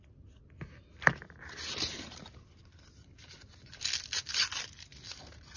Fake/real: real